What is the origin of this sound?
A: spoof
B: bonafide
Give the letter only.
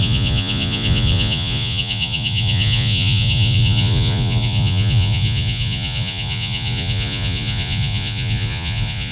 A